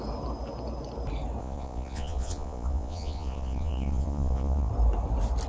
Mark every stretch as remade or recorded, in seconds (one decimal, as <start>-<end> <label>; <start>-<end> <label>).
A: 0.0-1.4 recorded; 1.4-4.7 remade; 4.7-5.5 recorded